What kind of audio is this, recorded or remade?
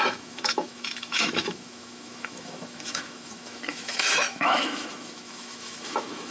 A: remade